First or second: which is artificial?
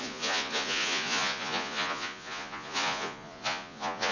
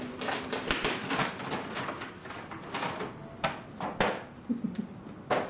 first